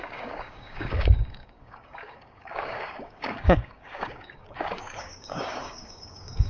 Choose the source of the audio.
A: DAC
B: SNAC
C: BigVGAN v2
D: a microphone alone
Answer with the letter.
A